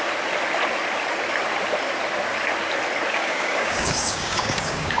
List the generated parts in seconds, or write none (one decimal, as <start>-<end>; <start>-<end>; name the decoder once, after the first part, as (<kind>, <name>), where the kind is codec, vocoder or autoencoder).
3.1-5.0 (codec, DAC)